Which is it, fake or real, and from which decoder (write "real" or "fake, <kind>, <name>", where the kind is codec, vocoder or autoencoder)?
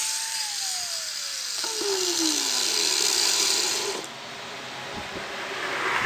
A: real